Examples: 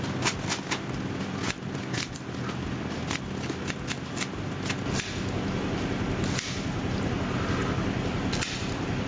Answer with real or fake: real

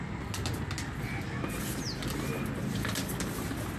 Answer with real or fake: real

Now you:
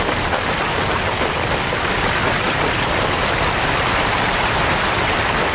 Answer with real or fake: real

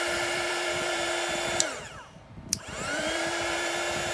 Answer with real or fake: fake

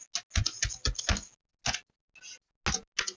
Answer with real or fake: real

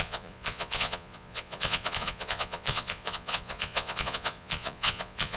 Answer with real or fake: fake